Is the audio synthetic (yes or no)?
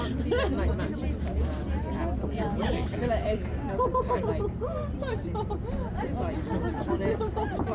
no